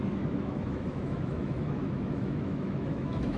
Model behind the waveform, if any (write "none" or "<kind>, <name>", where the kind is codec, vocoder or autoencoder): autoencoder, DAC-VAE